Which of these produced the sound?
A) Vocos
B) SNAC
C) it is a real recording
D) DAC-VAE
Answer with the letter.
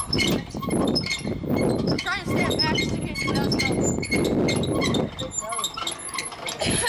C